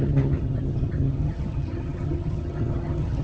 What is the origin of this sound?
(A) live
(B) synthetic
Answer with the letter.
B